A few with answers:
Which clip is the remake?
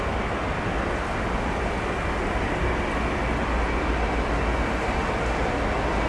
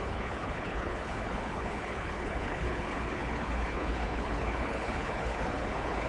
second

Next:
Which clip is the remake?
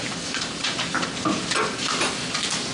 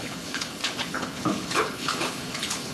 second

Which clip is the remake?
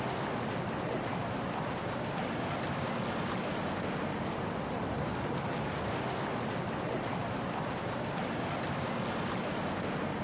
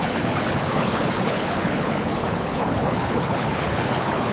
second